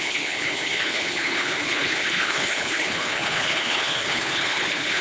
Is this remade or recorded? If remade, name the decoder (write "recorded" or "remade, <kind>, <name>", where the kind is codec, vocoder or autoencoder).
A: remade, codec, HILCodec